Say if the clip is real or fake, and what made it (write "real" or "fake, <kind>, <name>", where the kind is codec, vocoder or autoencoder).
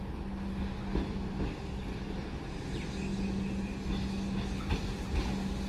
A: real